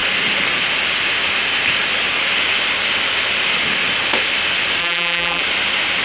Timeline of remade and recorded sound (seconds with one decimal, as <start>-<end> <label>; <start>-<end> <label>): 0.0-4.8 recorded; 4.8-5.4 remade; 5.4-6.0 recorded